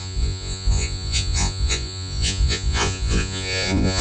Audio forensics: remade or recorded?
remade